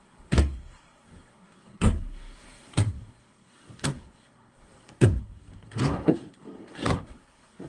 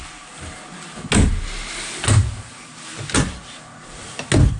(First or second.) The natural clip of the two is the second